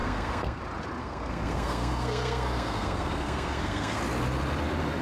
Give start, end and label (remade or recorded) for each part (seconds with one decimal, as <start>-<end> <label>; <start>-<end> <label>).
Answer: 0.0-0.6 remade; 0.6-1.0 recorded; 1.0-4.0 remade; 4.0-5.0 recorded